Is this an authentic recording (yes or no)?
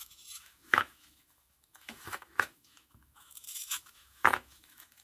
no